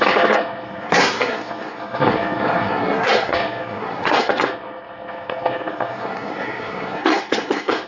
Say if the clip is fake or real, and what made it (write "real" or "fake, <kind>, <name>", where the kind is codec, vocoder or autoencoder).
fake, codec, SNAC